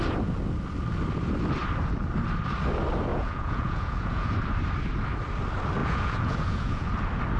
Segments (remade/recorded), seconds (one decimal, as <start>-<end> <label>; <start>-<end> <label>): 0.0-3.1 recorded; 3.1-4.3 remade; 4.3-5.8 recorded; 5.8-6.9 remade; 6.9-7.4 recorded